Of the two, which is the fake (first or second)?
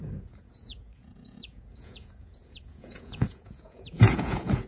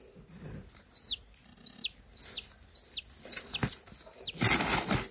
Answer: first